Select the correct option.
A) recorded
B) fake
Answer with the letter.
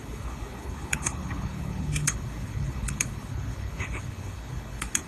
B